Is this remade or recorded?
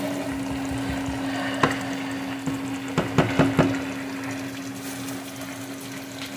recorded